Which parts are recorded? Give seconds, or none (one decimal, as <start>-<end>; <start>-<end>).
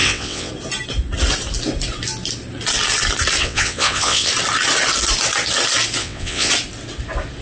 0.5-3.4; 4.3-6.0; 6.5-7.4